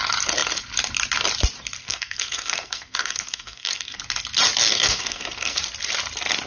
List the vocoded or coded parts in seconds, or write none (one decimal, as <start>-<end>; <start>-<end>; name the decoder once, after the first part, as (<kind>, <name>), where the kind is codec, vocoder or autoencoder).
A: 1.8-4.0 (codec, SNAC); 4.6-5.6